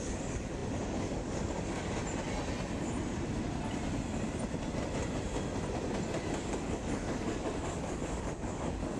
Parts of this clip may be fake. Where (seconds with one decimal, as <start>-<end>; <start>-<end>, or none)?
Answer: 0.0-2.0; 6.4-9.0